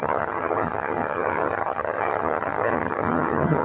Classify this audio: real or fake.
fake